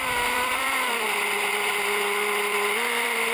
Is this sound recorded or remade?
remade